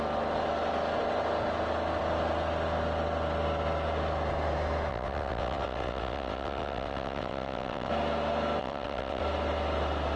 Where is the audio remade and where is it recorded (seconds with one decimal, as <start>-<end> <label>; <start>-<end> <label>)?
0.0-4.9 recorded; 4.9-7.9 remade; 7.9-8.6 recorded; 8.6-9.2 remade; 9.2-10.2 recorded